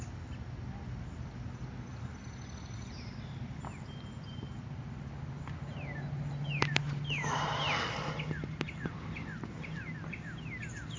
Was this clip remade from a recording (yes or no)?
no